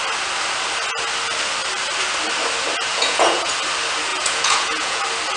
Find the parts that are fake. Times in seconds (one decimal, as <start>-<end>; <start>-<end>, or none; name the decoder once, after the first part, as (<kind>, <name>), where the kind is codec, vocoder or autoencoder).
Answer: 2.9-3.5 (vocoder, Vocos); 4.1-5.0